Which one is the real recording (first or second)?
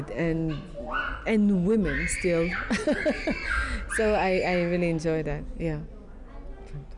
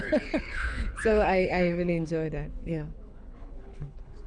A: first